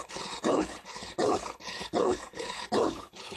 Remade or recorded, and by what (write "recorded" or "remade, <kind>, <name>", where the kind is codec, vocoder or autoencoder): remade, codec, HILCodec